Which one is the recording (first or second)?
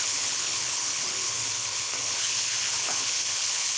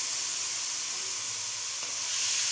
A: second